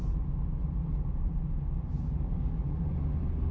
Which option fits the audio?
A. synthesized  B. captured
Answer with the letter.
B